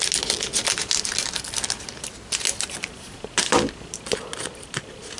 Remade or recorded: recorded